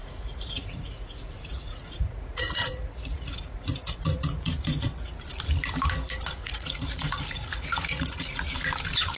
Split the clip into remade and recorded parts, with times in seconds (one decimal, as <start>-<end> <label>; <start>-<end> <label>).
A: 0.0-4.9 remade; 4.9-6.4 recorded; 6.4-8.4 remade; 8.4-9.2 recorded